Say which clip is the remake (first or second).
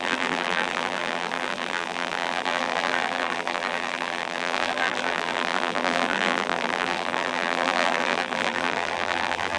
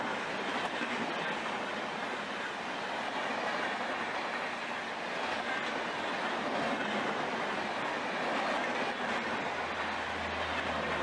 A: first